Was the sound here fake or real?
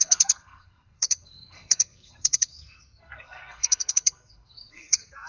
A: fake